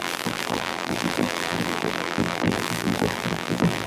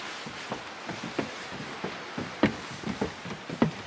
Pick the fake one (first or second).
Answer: first